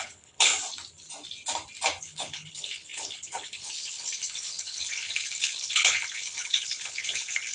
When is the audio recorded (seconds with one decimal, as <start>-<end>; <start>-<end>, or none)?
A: 0.5-2.0